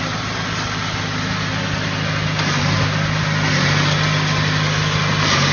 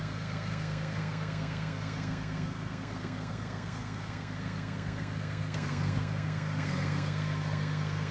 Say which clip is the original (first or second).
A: first